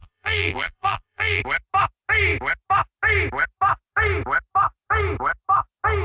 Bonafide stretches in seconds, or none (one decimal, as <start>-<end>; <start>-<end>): 1.4-6.0